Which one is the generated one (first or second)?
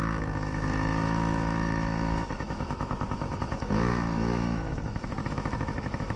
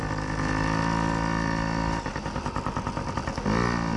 first